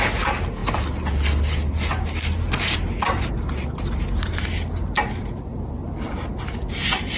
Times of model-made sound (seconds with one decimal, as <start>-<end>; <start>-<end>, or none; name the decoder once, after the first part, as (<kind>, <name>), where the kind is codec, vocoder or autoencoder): 5.8-6.4 (vocoder, BigVGAN v2)

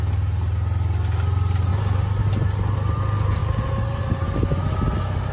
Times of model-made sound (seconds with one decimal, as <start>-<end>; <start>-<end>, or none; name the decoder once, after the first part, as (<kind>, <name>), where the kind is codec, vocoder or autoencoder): none

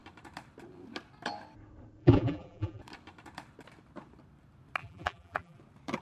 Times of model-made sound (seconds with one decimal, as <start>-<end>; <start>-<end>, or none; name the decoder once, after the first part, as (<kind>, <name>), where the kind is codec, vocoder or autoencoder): 2.0-2.8 (vocoder, BigVGAN v2); 4.8-5.6

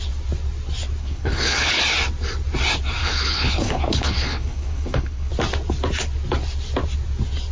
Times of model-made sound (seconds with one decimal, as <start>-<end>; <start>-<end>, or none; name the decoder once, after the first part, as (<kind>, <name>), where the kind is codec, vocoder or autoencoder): 1.0-1.8 (codec, HILCodec); 3.0-5.3

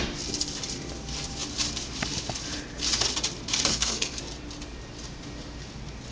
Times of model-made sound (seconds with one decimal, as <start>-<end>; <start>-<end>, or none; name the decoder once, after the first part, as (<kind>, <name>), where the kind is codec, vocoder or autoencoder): 3.7-4.2 (codec, SNAC)

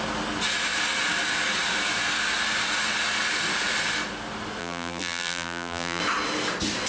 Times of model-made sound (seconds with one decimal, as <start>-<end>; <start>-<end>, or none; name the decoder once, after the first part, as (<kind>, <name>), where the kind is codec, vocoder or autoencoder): 4.6-6.0 (vocoder, BigVGAN v2)